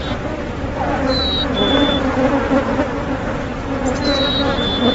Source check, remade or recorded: recorded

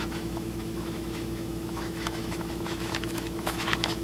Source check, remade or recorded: remade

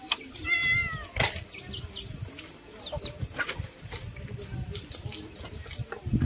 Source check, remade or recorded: recorded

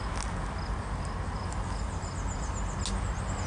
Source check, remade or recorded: recorded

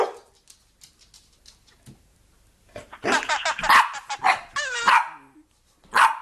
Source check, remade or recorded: recorded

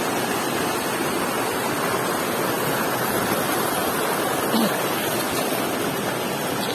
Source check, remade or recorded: recorded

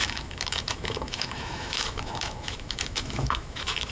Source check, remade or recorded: remade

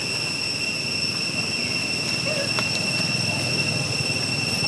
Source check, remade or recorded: recorded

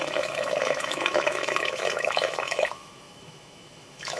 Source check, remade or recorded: remade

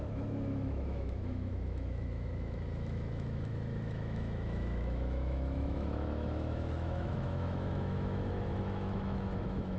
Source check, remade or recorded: remade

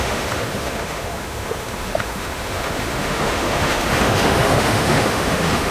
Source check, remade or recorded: remade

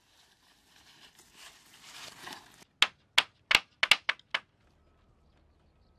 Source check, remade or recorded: recorded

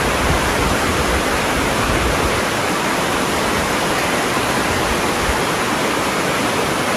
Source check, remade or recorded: recorded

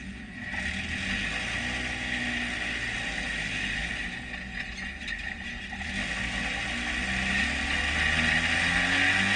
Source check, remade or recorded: recorded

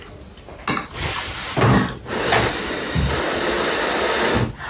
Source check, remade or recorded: recorded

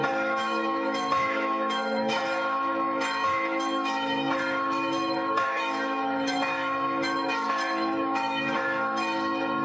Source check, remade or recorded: remade